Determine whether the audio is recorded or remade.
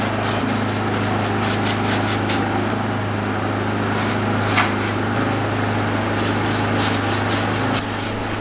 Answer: recorded